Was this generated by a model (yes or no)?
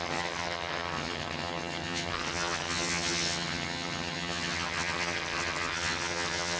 yes